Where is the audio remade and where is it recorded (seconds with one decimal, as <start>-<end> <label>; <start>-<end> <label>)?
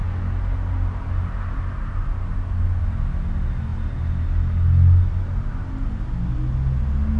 0.0-7.2 recorded